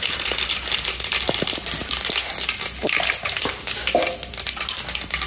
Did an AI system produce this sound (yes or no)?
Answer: no